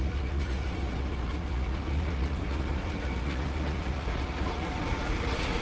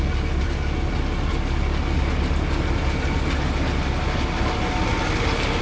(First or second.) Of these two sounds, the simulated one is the first